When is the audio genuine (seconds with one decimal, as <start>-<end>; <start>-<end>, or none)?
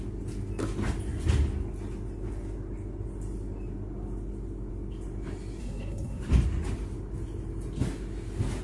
0.0-5.6; 6.2-8.6